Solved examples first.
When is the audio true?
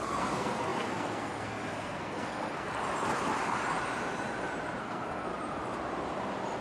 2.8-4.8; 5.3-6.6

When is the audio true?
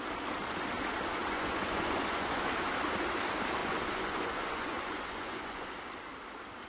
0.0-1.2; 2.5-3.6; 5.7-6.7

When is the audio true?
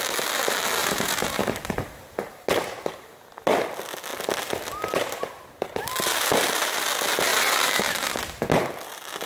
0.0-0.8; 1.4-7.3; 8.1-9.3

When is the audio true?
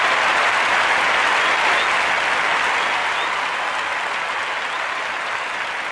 0.0-5.9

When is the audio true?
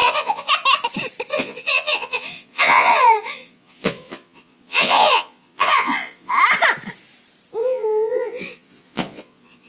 0.5-1.3; 6.3-7.6